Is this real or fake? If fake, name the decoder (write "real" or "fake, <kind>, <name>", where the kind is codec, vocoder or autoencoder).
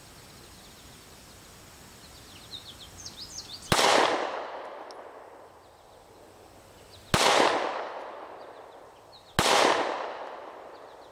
real